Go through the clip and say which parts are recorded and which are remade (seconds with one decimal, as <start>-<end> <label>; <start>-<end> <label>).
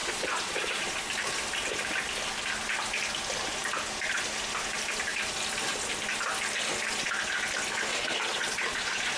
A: 0.0-0.9 remade; 0.9-7.9 recorded; 7.9-9.2 remade